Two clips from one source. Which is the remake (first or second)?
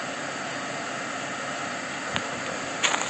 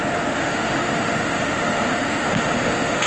second